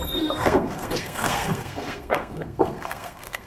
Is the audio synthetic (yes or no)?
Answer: yes